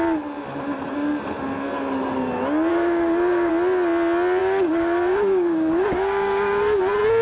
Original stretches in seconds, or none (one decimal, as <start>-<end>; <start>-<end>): 0.0-2.7; 3.5-4.4; 6.8-7.2